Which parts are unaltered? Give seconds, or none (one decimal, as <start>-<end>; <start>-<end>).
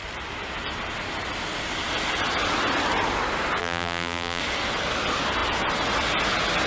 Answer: 0.0-3.6; 4.4-6.7